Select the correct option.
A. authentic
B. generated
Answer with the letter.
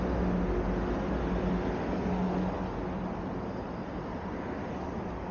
A